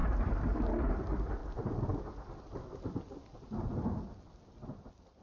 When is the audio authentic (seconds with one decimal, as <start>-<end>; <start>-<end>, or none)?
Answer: 1.0-3.2; 4.1-5.2